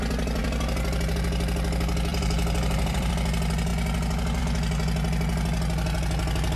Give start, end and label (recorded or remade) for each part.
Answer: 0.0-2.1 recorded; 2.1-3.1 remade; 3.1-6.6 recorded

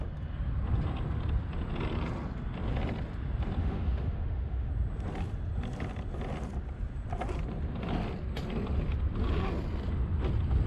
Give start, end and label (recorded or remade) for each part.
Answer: 0.0-3.6 recorded; 3.6-4.7 remade; 4.7-10.7 recorded

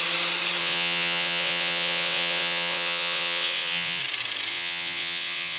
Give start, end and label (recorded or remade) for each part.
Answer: 0.0-0.6 recorded; 0.6-4.0 remade; 4.0-4.5 recorded; 4.5-5.6 remade

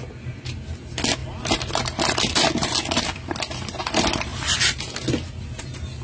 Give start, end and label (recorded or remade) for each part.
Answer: 0.0-6.0 recorded

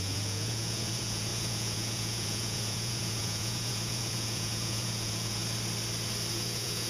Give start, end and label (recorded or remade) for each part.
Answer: 0.0-5.4 remade; 5.4-6.3 recorded; 6.3-6.9 remade

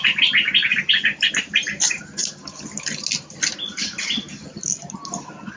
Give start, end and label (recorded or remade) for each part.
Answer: 0.0-5.6 recorded